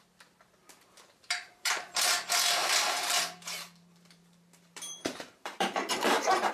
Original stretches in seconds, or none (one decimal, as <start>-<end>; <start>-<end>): 0.0-0.6; 2.1-2.6